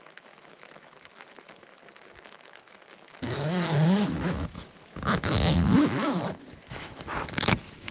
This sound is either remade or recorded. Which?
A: remade